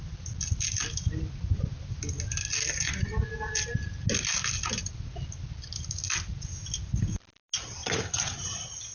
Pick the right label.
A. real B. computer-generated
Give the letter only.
A